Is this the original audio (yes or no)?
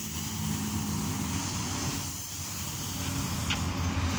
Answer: yes